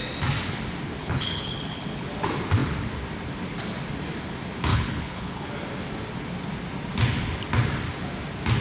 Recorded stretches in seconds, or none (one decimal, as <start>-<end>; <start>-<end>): 0.0-1.0; 2.1-4.7; 5.5-8.6